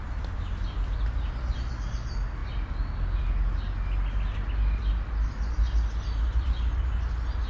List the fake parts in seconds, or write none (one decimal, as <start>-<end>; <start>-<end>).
none